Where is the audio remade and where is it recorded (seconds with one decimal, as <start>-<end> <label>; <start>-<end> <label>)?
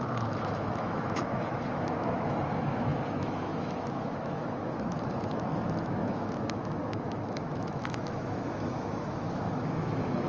0.0-10.3 remade